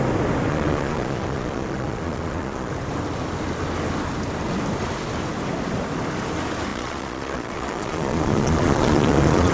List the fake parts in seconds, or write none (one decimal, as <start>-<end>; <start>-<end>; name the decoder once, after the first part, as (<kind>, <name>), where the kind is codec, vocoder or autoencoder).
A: 0.5-2.7 (vocoder, Vocos); 6.7-9.5